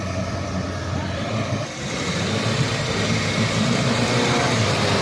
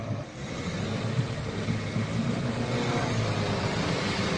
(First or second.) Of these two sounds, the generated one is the first